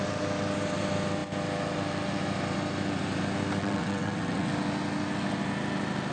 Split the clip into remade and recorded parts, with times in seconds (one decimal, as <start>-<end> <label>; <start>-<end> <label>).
0.0-3.6 recorded; 3.6-4.5 remade; 4.5-6.1 recorded